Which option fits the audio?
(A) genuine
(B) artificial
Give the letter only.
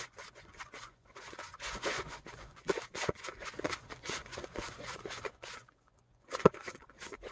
B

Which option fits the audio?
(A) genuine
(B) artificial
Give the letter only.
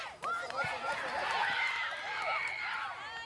A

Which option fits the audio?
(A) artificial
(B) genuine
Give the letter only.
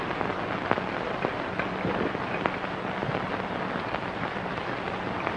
B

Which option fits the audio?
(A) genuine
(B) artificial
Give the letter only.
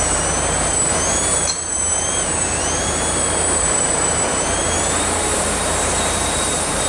B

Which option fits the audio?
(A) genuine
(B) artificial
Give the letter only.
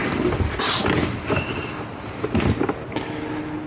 A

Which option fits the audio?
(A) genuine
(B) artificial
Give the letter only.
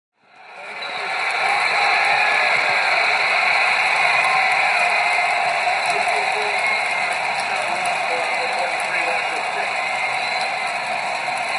A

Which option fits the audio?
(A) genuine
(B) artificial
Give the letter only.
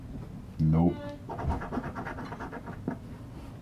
A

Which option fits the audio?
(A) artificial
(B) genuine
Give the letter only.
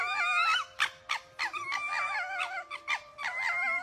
B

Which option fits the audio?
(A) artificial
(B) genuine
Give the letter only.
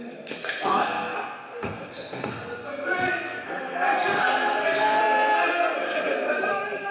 A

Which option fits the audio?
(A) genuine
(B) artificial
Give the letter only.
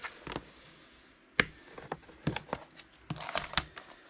A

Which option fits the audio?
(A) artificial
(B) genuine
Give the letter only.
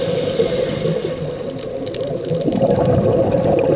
A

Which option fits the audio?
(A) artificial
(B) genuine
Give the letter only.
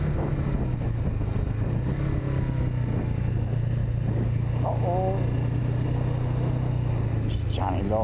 B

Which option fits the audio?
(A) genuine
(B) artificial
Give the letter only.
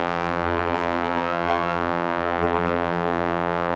B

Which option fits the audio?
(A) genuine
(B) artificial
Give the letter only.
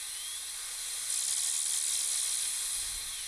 A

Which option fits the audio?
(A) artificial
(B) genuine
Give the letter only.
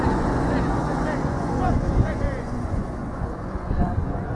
A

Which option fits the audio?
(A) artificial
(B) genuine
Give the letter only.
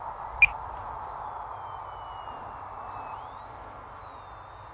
B